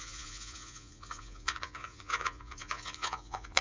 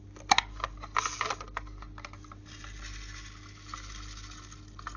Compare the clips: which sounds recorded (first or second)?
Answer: second